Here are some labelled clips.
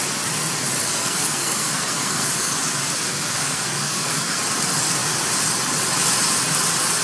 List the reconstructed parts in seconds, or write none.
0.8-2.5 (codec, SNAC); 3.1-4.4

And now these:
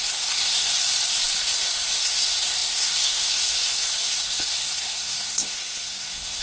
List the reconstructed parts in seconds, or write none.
0.0-0.7 (codec, SNAC); 1.4-6.4

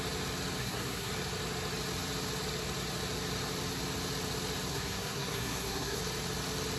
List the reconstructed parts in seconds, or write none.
0.6-1.1 (codec, SNAC); 4.7-6.0

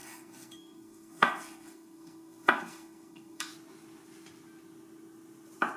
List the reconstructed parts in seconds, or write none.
0.0-3.5 (codec, SNAC)

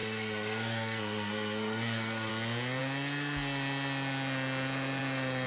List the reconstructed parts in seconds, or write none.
0.0-2.3 (codec, SNAC)